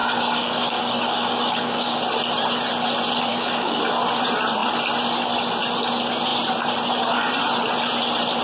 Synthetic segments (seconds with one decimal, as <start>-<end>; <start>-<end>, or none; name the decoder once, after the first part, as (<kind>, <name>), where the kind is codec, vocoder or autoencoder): 0.0-2.0 (codec, DAC); 3.3-3.8